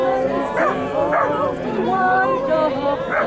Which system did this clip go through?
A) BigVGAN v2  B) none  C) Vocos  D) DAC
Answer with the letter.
A